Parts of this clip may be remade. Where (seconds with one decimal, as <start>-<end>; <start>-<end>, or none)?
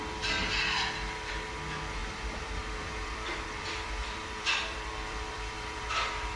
2.0-5.8